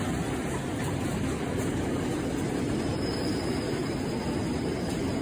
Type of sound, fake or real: real